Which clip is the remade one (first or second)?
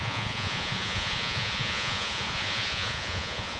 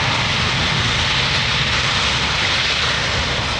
first